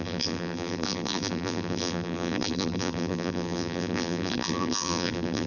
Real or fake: fake